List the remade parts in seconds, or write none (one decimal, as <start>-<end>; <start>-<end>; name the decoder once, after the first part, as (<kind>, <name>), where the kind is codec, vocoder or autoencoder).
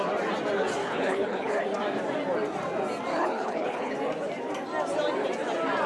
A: 0.8-1.6 (codec, HILCodec); 3.1-3.9